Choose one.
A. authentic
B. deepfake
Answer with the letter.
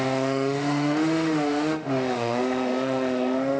B